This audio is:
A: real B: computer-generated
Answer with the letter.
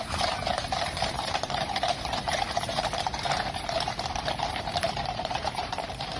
B